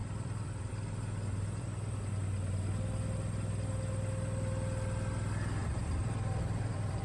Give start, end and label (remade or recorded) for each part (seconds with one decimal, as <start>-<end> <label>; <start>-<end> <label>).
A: 0.0-0.7 remade; 0.7-5.6 recorded; 5.6-7.0 remade